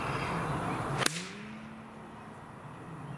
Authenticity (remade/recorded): recorded